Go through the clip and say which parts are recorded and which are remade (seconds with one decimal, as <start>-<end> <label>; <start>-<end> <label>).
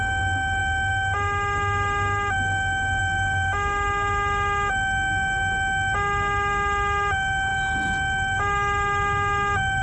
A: 0.0-9.8 remade